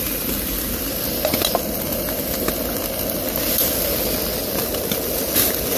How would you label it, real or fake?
real